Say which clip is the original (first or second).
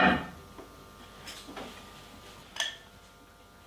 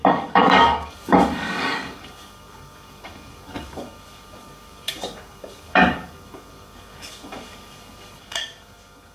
first